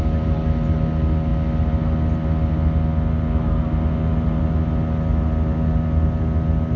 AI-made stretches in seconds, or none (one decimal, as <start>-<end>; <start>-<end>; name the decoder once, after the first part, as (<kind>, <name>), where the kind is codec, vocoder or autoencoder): none